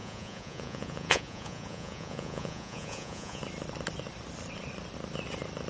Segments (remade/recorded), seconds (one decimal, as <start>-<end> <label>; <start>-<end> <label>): 0.0-3.4 remade; 3.4-5.7 recorded